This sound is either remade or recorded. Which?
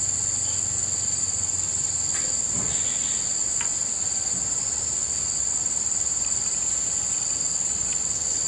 recorded